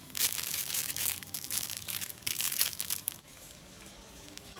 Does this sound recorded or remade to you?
remade